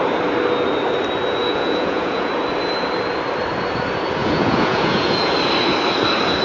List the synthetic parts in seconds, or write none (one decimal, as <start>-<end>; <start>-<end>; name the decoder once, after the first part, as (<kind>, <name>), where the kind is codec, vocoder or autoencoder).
1.4-2.3 (vocoder, Vocos); 4.2-5.3